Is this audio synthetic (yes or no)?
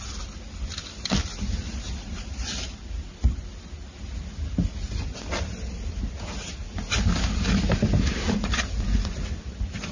no